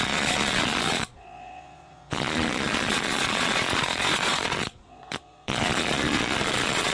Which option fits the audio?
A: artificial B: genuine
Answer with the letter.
A